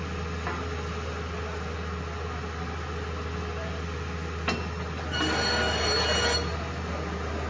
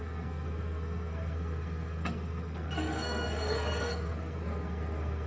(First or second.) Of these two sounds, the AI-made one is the second